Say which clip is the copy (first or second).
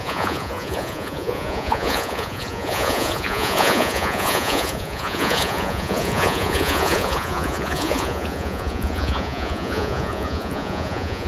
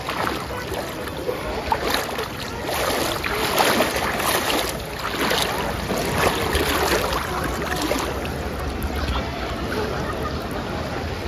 first